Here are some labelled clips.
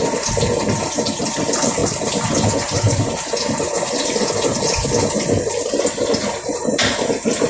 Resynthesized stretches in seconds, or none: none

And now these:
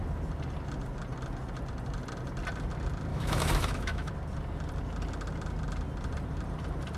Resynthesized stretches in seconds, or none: 3.1-4.1 (autoencoder, DAC-VAE)